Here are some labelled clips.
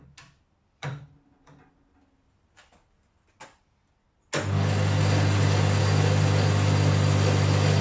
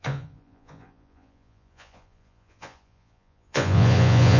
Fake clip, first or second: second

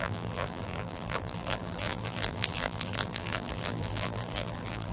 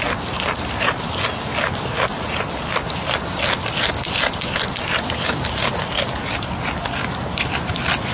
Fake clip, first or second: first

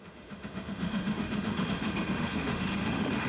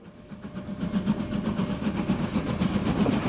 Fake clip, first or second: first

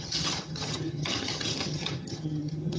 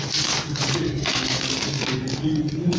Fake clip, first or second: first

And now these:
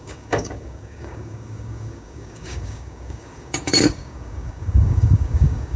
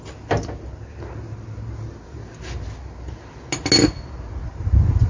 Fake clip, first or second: first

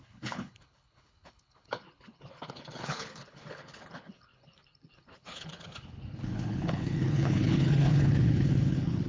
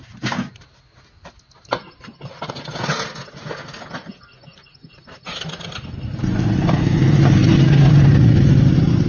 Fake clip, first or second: first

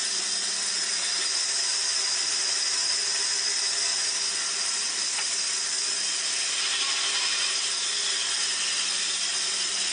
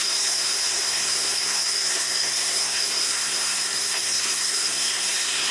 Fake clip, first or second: second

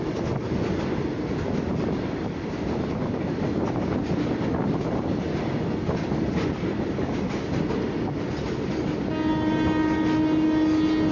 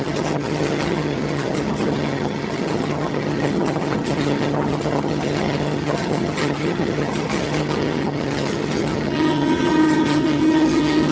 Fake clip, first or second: second